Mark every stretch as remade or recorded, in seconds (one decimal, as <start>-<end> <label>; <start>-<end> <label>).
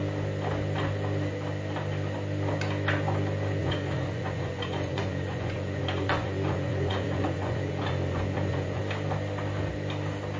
0.0-3.6 recorded; 3.6-8.8 remade; 8.8-10.4 recorded